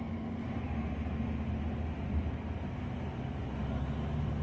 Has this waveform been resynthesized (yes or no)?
no